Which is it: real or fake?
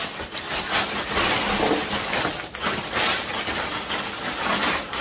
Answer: real